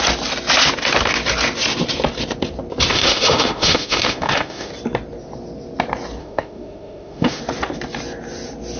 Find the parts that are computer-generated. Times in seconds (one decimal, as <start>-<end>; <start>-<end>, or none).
2.9-4.7; 6.2-7.4